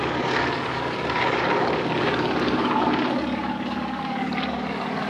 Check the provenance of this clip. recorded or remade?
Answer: remade